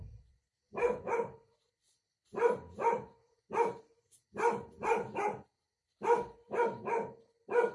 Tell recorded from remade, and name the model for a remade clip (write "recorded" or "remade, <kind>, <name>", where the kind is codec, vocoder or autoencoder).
remade, vocoder, BigVGAN v2